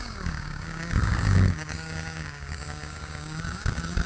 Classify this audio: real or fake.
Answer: fake